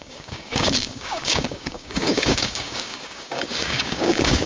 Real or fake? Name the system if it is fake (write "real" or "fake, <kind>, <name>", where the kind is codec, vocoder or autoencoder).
fake, codec, DAC